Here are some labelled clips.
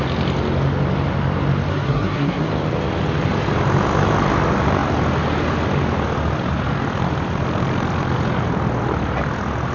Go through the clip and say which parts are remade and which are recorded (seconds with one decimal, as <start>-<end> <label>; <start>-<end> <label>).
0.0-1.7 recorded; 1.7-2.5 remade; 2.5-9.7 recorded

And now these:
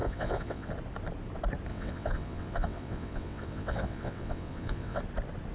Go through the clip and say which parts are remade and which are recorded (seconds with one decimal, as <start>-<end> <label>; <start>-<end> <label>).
0.0-0.7 remade; 0.7-1.7 recorded; 1.7-5.0 remade; 5.0-5.5 recorded

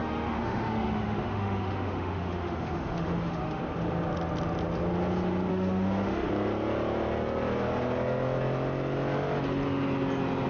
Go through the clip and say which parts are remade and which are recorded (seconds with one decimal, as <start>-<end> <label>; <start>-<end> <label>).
0.0-3.6 remade; 3.6-5.5 recorded; 5.5-6.3 remade; 6.3-10.5 recorded

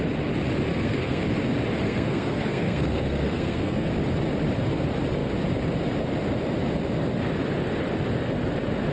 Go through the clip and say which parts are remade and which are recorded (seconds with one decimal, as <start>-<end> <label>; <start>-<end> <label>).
0.0-0.7 recorded; 0.7-1.2 remade; 1.2-1.8 recorded; 1.8-3.9 remade; 3.9-8.9 recorded